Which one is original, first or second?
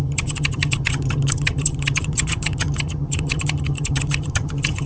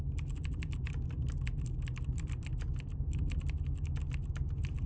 second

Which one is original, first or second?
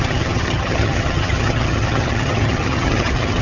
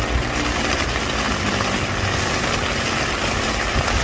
second